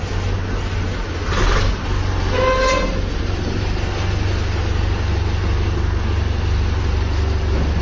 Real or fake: real